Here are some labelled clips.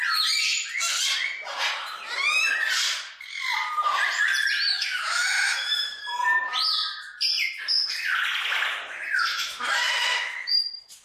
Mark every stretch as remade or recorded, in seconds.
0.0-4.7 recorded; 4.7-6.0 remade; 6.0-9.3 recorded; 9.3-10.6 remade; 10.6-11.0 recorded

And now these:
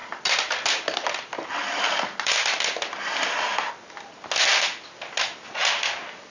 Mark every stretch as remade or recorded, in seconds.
0.0-6.3 recorded

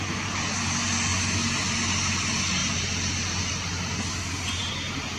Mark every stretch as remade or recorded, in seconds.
0.0-5.2 recorded

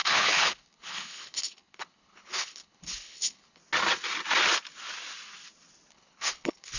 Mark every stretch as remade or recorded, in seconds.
0.0-3.6 remade; 3.6-5.9 recorded; 5.9-6.8 remade

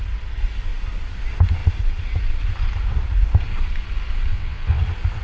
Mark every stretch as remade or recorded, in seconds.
0.0-4.3 recorded; 4.3-4.8 remade; 4.8-5.2 recorded

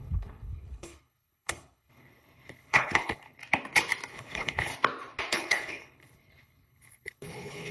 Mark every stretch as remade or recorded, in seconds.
0.0-3.4 remade; 3.4-4.1 recorded; 4.1-4.7 remade; 4.7-5.3 recorded; 5.3-7.7 remade

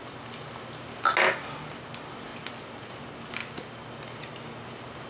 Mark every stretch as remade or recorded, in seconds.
0.0-5.1 recorded

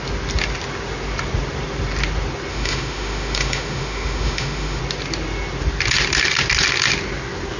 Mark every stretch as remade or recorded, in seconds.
0.0-2.5 recorded; 2.5-4.8 remade; 4.8-7.6 recorded